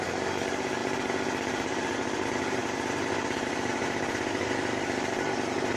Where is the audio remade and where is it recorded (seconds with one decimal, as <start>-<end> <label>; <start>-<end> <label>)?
0.0-0.8 remade; 0.8-1.5 recorded; 1.5-5.8 remade